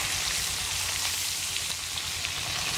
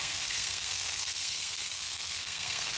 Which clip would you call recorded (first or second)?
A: first